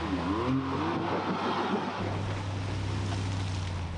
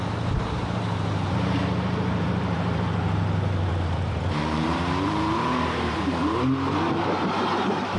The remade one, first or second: second